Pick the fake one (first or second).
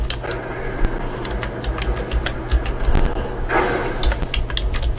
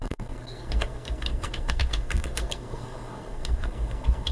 second